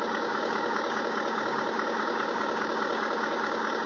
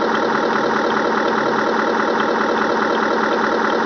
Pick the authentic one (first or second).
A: second